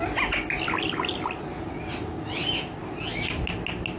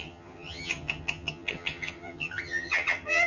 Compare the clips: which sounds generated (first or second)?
second